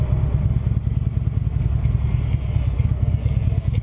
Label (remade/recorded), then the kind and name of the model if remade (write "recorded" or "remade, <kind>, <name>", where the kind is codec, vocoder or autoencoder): recorded